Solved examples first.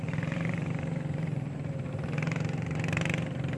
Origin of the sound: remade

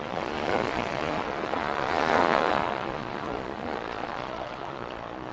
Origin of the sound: remade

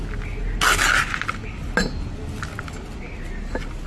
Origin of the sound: recorded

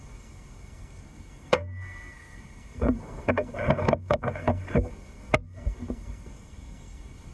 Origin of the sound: remade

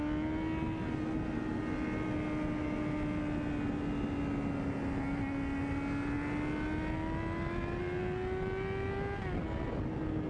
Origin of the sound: recorded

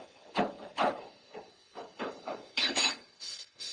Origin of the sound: remade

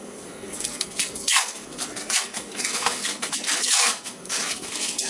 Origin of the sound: remade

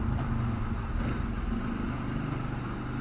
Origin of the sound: recorded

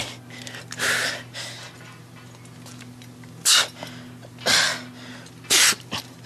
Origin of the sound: recorded